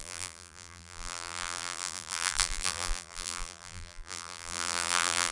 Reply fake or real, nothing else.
fake